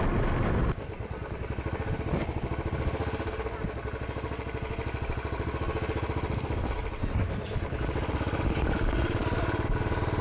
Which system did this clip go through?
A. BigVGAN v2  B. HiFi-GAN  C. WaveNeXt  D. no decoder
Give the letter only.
D